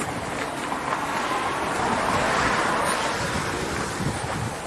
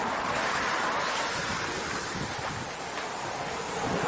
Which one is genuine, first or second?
first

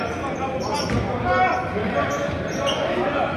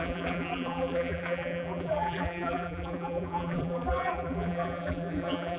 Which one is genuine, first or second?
first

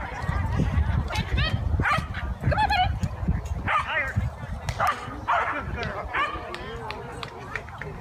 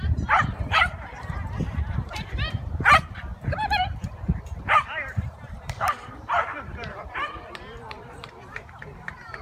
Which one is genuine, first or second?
first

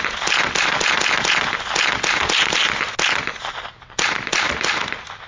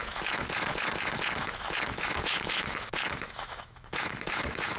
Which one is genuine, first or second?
first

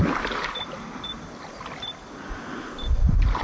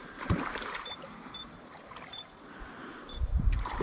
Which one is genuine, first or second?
first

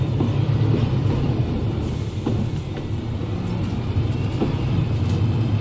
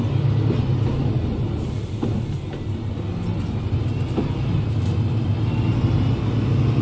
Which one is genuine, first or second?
second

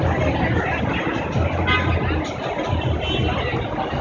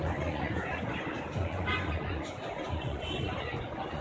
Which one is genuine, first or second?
first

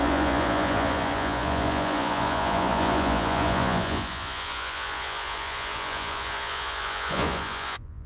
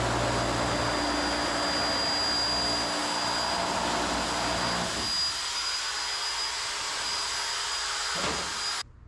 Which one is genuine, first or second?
second